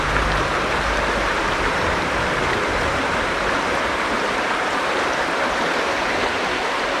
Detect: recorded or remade remade